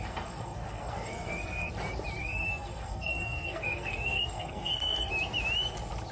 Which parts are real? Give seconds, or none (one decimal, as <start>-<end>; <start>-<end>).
1.7-2.2; 5.1-6.1

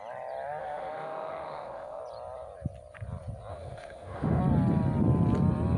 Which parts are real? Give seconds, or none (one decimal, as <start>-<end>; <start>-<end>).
0.0-0.6; 2.0-3.5; 4.4-5.8

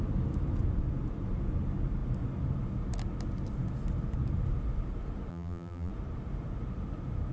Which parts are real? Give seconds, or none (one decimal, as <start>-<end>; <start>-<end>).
0.0-5.3; 5.9-7.3

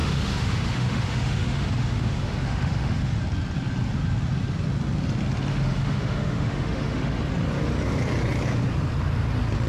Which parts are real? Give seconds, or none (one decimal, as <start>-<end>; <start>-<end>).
3.2-5.5; 7.2-9.7

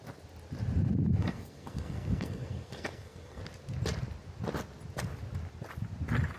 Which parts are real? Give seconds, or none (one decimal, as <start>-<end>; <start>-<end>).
0.0-1.2; 3.4-6.4

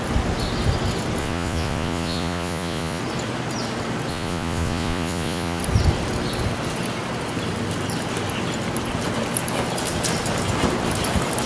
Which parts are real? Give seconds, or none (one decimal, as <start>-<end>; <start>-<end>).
0.0-1.2; 3.0-4.1; 5.6-11.5

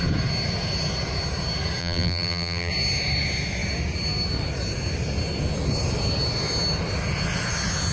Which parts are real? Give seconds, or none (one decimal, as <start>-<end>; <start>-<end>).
0.0-1.8; 2.7-7.9